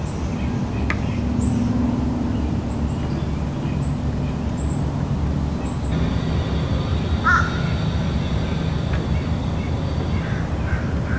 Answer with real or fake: real